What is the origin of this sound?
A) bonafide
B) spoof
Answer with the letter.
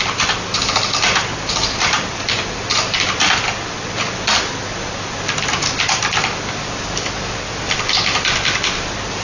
A